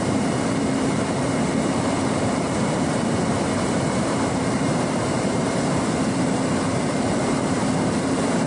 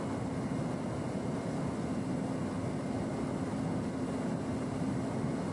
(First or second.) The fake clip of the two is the first